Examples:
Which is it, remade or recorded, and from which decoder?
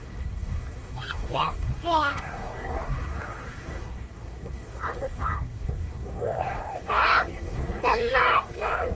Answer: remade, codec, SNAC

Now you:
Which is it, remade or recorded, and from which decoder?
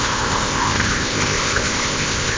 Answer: remade, codec, ZipCodec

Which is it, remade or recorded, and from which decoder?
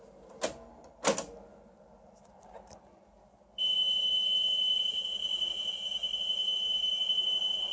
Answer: recorded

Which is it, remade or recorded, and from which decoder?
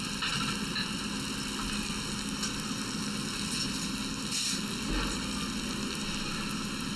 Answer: recorded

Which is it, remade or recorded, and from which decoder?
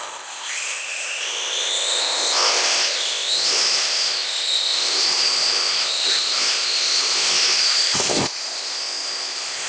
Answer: remade, codec, ZipCodec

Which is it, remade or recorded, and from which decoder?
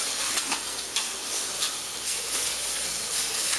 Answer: remade, codec, SNAC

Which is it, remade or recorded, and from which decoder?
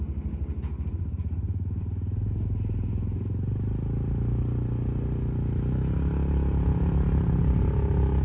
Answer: recorded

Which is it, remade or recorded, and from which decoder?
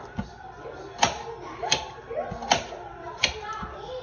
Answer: recorded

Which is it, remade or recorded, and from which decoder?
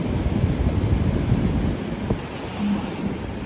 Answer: recorded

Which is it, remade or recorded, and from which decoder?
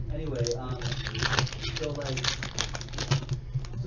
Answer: recorded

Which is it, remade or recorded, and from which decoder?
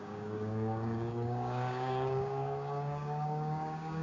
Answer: remade, codec, DAC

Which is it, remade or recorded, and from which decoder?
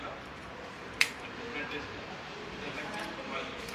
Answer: remade, vocoder, BigVGAN v2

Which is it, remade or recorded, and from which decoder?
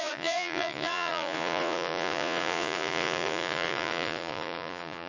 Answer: remade, vocoder, Vocos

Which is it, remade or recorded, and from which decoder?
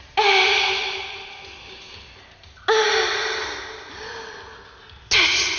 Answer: recorded